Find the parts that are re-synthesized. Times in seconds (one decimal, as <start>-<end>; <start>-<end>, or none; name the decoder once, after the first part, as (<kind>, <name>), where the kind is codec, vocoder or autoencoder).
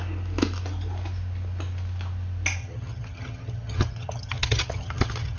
2.6-5.4 (vocoder, HiFi-GAN)